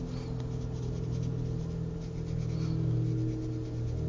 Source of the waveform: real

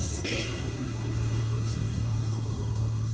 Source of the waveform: fake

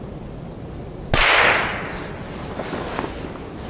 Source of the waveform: real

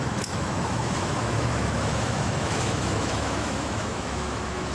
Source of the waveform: fake